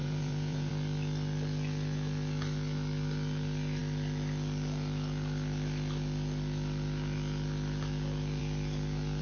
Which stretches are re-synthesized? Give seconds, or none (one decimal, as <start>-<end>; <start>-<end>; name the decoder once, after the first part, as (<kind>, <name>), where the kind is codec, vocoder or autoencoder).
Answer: 0.0-0.7 (vocoder, Vocos)